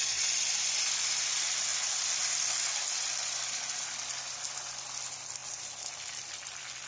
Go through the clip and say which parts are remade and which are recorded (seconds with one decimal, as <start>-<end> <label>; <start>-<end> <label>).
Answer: 0.0-6.9 recorded